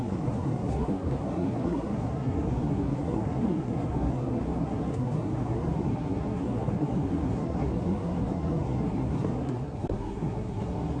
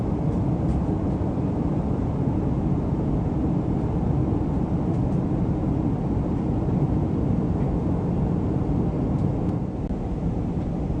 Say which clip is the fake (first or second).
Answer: first